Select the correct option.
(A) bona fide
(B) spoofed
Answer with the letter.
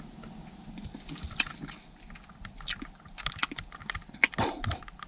A